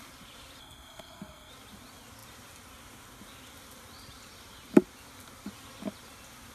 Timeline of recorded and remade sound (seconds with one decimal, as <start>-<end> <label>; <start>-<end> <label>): 0.0-0.6 recorded; 0.6-1.5 remade; 1.5-6.5 recorded